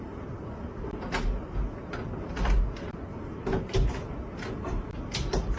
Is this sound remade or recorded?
remade